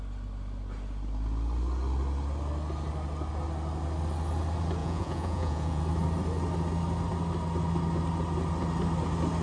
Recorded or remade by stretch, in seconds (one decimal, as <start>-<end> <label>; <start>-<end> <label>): 0.0-4.8 recorded; 4.8-5.8 remade; 5.8-9.4 recorded